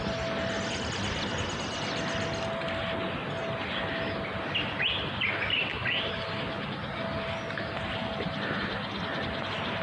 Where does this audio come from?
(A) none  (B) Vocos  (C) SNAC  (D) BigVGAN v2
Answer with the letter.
A